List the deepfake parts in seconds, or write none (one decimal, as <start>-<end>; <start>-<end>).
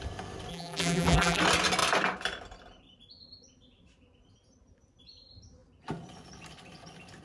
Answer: 0.5-1.4